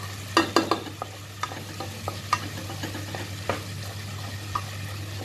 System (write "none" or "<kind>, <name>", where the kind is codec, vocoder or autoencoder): none